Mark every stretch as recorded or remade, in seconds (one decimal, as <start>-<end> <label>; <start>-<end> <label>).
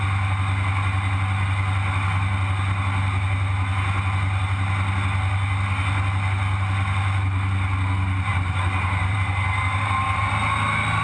0.0-8.3 recorded; 8.3-10.3 remade; 10.3-11.0 recorded